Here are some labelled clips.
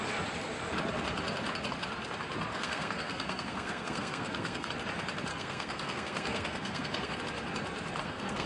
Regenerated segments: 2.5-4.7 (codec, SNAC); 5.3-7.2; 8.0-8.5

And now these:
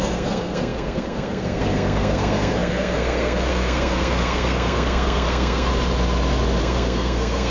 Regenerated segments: 0.0-5.7 (codec, SNAC); 6.6-7.5

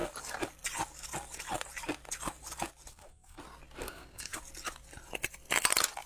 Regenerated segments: 2.9-3.4 (codec, SNAC); 3.8-4.4

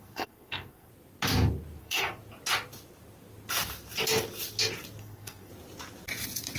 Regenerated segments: 0.0-0.9 (codec, SNAC); 1.8-2.2; 5.0-5.5